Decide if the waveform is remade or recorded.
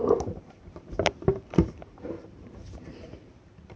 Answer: remade